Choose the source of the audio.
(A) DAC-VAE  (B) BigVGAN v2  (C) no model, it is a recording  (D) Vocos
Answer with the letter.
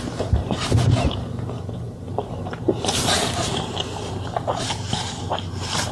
B